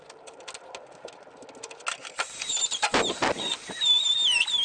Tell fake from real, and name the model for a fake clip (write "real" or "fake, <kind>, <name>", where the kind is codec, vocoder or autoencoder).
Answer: real